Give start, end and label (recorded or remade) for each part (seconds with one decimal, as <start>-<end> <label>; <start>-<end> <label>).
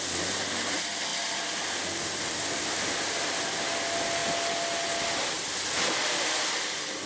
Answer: 0.0-7.1 recorded